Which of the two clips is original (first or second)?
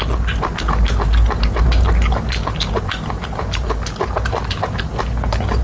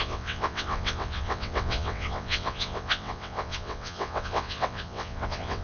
first